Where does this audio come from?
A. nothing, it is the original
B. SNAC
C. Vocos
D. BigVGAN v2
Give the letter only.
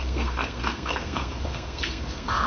B